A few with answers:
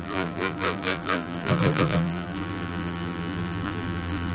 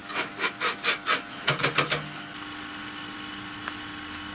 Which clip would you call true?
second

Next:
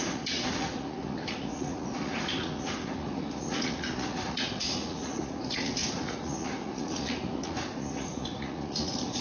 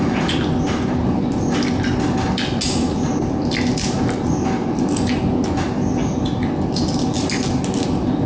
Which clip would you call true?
second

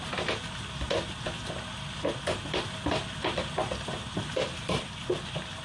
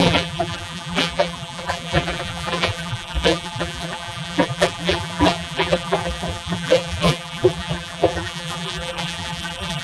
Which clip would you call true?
first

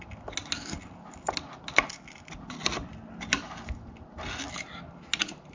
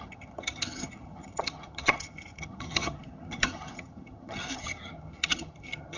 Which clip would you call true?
first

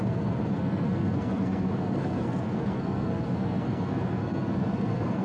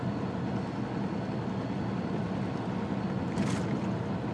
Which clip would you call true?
second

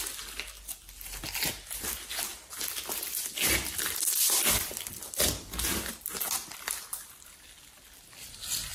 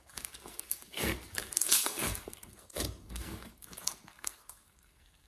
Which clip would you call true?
first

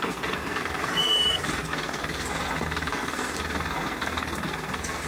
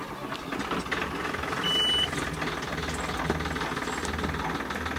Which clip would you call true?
second